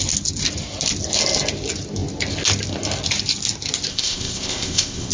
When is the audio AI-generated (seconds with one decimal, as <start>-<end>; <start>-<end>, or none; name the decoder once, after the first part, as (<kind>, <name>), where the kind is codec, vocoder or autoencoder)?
3.9-5.1 (codec, ZipCodec)